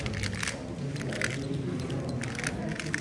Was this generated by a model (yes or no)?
no